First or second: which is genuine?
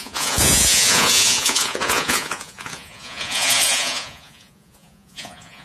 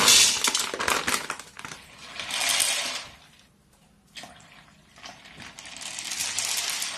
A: second